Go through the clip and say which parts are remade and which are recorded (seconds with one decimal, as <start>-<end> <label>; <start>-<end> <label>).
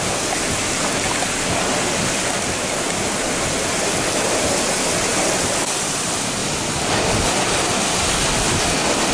0.0-5.1 recorded; 5.1-5.8 remade; 5.8-6.4 recorded; 6.4-7.2 remade; 7.2-9.1 recorded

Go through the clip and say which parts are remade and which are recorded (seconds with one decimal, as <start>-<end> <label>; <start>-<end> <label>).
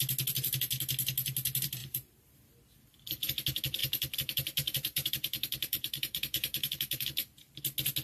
0.0-1.8 recorded; 1.8-2.3 remade; 2.3-3.8 recorded; 3.8-7.6 remade; 7.6-8.0 recorded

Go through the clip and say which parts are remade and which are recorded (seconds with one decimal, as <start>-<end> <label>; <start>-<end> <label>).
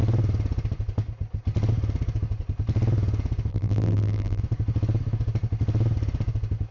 0.0-3.5 recorded; 3.5-4.4 remade; 4.4-6.7 recorded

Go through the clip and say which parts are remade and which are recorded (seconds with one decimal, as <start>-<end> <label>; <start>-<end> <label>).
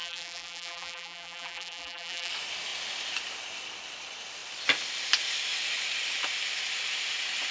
0.0-2.3 remade; 2.3-7.5 recorded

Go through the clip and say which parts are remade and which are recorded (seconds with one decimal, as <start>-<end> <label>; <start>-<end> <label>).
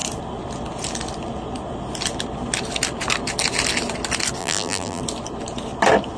0.0-4.4 recorded; 4.4-5.0 remade; 5.0-6.2 recorded